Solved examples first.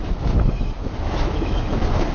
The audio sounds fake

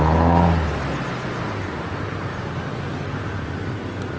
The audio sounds real